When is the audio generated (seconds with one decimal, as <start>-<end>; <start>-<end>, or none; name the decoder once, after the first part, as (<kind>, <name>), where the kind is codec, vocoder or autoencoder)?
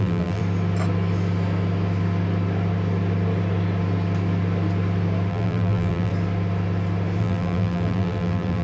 0.0-0.4 (vocoder, BigVGAN v2); 5.3-6.1; 7.2-8.6